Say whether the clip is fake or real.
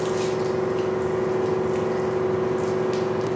real